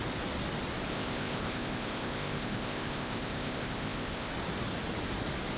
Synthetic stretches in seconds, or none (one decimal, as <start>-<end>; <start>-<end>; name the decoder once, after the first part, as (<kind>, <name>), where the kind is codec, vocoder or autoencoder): 0.9-4.3 (codec, ZipCodec)

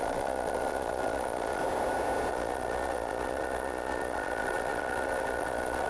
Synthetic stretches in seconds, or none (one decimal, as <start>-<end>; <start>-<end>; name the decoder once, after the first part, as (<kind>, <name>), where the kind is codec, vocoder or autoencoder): 0.0-1.6 (vocoder, Vocos); 2.3-5.9

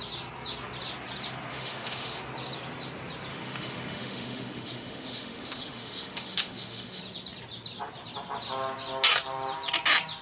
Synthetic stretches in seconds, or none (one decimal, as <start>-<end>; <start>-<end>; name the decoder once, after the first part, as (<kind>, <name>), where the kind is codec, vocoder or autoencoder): 1.5-2.2 (autoencoder, DAC-VAE); 3.3-7.0

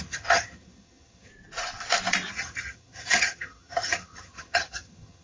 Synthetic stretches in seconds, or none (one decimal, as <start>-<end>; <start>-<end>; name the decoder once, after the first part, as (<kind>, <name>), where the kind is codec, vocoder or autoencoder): 0.0-1.3 (vocoder, HiFi-GAN); 2.3-5.2

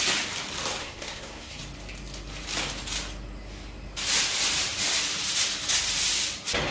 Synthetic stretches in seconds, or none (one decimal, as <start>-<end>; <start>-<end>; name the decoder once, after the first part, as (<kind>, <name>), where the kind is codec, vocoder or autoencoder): 0.8-1.6 (codec, SNAC)

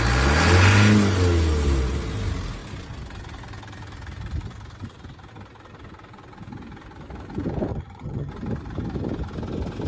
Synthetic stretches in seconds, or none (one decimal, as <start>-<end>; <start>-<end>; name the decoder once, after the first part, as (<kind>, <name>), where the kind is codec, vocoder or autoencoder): 7.7-8.3 (vocoder, HiFi-GAN)

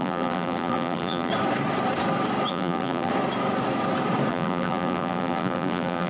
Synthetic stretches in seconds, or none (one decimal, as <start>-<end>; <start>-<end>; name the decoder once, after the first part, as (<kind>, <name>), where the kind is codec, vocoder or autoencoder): 0.0-1.3 (vocoder, BigVGAN v2); 2.5-3.1; 4.3-6.1